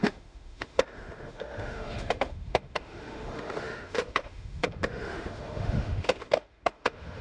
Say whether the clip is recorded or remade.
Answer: remade